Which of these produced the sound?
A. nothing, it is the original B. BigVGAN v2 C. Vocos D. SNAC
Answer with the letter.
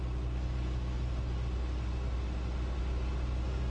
A